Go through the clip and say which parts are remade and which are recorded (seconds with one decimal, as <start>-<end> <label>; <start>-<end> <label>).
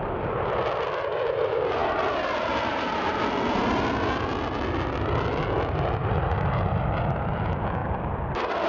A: 0.0-8.7 recorded